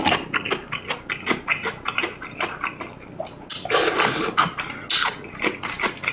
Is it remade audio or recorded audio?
recorded